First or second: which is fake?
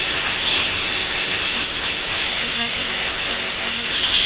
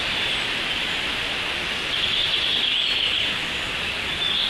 first